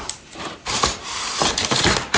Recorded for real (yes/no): yes